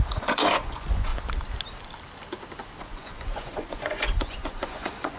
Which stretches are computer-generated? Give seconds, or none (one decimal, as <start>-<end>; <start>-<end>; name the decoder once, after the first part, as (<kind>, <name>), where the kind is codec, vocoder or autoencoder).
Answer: 0.0-1.1 (vocoder, Vocos); 2.8-5.2